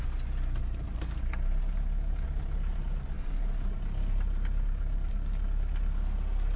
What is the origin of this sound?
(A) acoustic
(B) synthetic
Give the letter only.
A